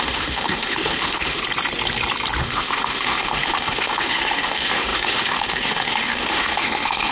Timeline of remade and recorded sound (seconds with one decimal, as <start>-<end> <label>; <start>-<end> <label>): 0.0-1.4 remade; 1.4-2.4 recorded; 2.4-7.1 remade